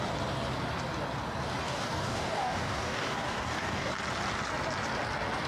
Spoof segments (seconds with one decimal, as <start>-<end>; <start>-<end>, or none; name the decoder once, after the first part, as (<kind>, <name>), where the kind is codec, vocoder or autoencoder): 1.6-3.9 (codec, DAC)